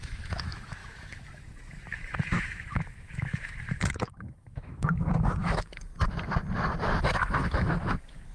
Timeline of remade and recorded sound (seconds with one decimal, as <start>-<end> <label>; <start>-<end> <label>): 0.0-5.9 remade; 5.9-7.0 recorded; 7.0-8.3 remade